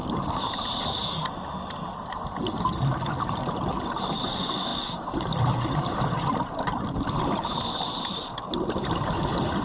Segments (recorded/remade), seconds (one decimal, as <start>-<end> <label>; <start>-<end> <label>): 0.0-3.9 recorded; 3.9-9.6 remade